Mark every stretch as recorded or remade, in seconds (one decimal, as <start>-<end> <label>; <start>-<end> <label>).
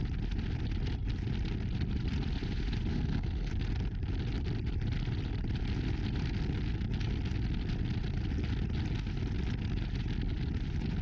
0.0-2.9 recorded; 2.9-3.5 remade; 3.5-11.0 recorded